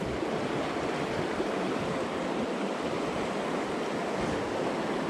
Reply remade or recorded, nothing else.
recorded